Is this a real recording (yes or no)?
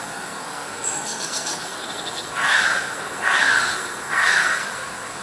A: no